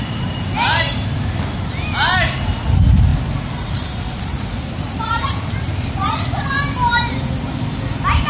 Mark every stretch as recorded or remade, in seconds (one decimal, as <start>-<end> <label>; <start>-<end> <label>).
0.0-3.1 recorded; 3.1-5.9 remade; 5.9-8.3 recorded